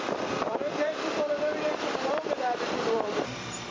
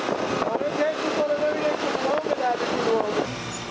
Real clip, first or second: second